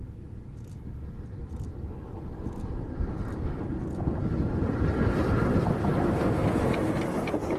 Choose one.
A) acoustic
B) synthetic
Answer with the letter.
A